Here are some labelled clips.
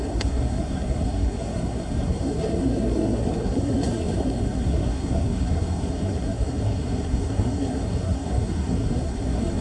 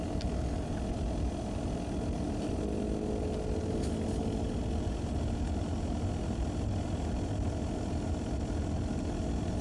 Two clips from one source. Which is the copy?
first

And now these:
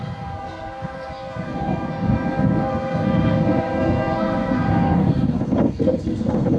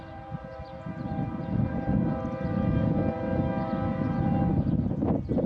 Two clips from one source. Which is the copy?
first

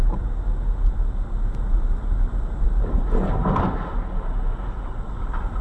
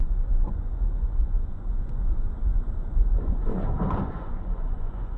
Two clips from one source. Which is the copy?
second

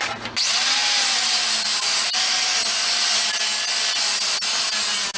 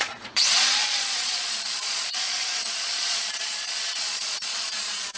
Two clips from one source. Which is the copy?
second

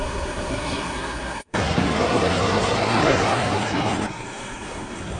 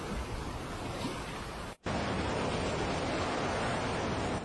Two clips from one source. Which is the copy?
first